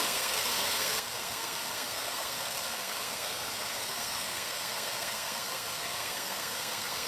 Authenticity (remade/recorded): remade